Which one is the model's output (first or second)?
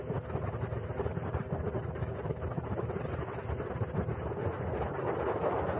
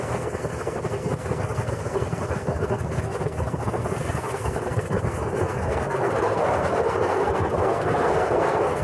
second